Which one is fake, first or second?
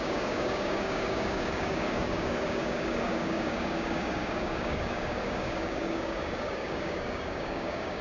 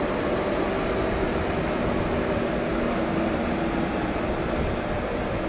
first